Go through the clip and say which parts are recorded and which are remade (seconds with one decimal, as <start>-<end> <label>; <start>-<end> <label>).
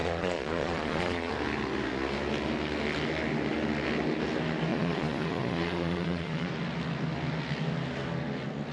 0.0-1.3 remade; 1.3-4.7 recorded; 4.7-6.5 remade; 6.5-8.7 recorded